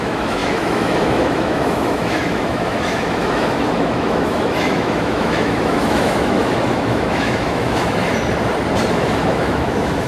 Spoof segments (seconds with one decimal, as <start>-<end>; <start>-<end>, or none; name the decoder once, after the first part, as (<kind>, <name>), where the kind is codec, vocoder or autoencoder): 0.0-8.0 (autoencoder, DAC-VAE); 8.9-10.1